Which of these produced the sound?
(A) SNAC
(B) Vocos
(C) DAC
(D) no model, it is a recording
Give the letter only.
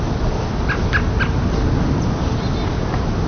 D